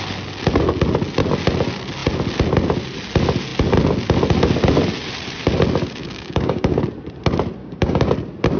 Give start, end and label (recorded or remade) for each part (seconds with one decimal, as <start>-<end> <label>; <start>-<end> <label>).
0.0-6.0 recorded; 6.0-6.8 remade; 6.8-7.6 recorded; 7.6-8.1 remade; 8.1-8.6 recorded